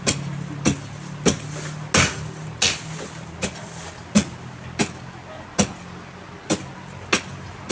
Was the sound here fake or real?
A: real